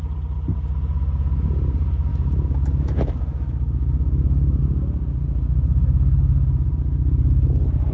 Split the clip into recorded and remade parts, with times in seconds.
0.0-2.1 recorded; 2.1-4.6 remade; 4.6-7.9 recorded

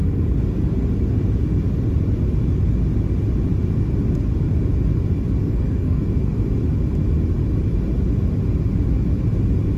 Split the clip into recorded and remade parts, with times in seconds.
0.0-5.4 recorded; 5.4-6.0 remade; 6.0-9.8 recorded

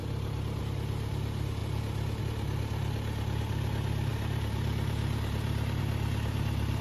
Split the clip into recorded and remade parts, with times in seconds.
0.0-4.1 recorded; 4.1-5.8 remade; 5.8-6.8 recorded

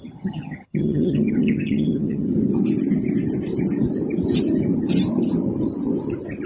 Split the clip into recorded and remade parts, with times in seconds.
0.0-2.3 remade; 2.3-6.5 recorded

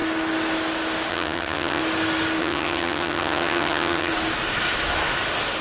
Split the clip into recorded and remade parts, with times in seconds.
0.0-1.1 recorded; 1.1-1.8 remade; 1.8-2.4 recorded; 2.4-4.1 remade; 4.1-5.6 recorded